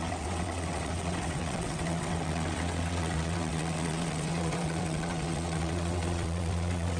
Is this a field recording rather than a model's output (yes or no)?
no